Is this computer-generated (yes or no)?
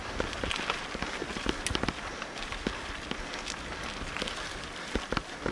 no